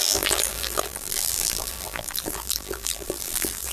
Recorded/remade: remade